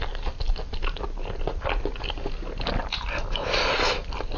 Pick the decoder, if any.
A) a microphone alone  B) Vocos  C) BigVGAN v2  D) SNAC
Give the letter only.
A